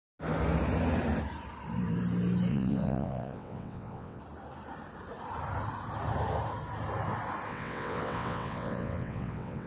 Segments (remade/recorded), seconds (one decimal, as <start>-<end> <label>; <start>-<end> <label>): 0.0-2.5 recorded; 2.5-4.2 remade; 4.2-7.5 recorded; 7.5-9.7 remade